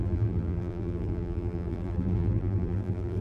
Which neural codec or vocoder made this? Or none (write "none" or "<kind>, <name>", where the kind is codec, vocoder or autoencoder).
vocoder, BigVGAN v2